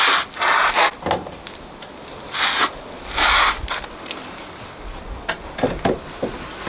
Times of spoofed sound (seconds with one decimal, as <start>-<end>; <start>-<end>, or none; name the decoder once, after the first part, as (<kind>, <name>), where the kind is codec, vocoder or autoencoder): none